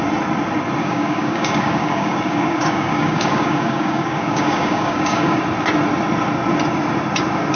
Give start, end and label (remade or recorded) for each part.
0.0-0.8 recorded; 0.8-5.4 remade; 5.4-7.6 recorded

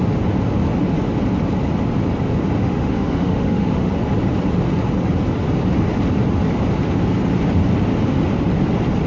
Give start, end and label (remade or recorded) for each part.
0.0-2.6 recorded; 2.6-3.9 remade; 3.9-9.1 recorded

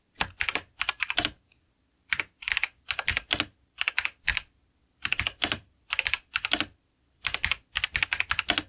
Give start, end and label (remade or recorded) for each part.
0.0-4.3 recorded; 4.3-7.2 remade; 7.2-8.7 recorded